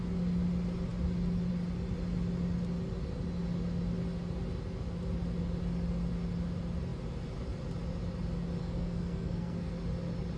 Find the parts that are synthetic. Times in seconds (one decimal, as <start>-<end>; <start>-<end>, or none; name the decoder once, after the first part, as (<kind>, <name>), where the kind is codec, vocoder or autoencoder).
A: 8.6-9.7 (codec, SNAC)